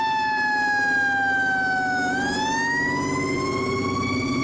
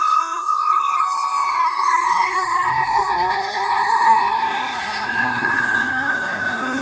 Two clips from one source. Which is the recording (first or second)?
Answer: first